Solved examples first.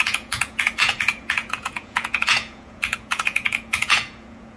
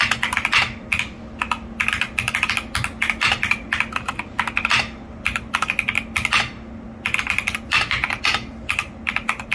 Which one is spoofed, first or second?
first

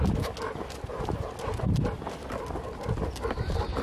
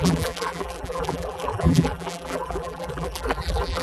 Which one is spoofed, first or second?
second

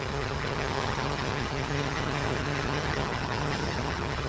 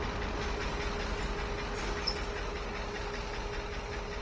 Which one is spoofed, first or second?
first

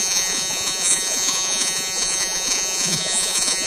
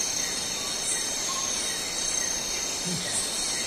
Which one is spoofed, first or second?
first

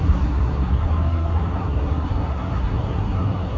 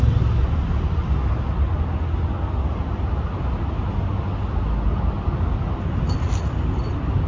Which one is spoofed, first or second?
first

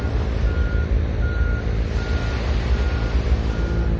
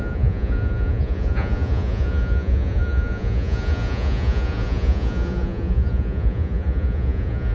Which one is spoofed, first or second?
second